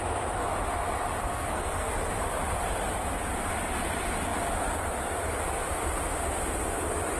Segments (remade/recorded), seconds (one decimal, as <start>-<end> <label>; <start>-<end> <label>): 0.0-1.2 recorded; 1.2-1.9 remade; 1.9-7.2 recorded